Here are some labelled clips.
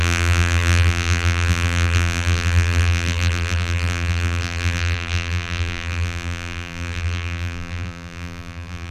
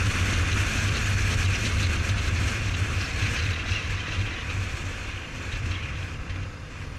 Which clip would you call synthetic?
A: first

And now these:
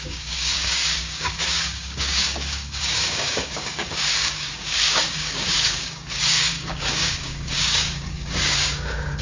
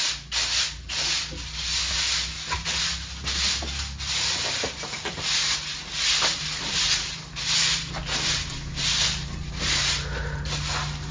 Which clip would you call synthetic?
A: first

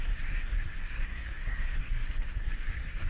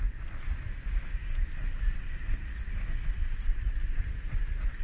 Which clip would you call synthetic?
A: first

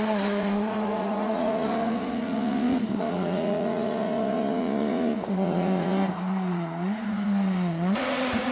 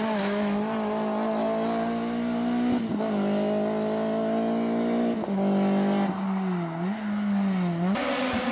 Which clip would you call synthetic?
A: first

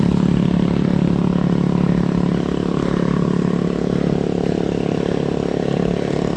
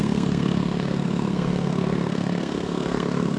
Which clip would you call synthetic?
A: second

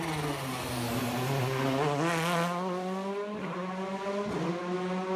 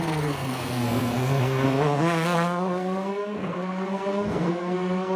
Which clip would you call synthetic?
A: second